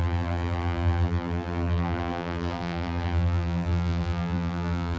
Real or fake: fake